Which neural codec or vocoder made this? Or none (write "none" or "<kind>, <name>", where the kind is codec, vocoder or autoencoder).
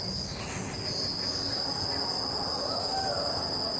none